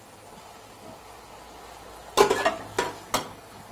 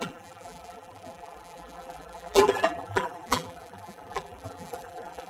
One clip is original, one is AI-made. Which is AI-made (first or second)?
second